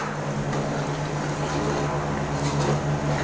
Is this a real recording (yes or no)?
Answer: yes